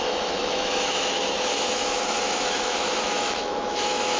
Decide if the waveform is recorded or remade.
remade